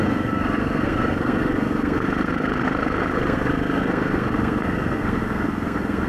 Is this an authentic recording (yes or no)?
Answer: no